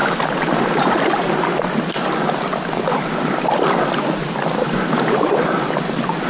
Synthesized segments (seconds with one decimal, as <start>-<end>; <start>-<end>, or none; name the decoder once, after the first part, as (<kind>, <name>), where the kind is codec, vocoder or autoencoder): none